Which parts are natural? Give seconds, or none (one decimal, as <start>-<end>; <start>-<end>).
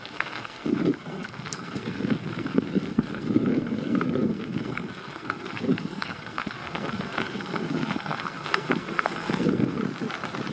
9.8-10.5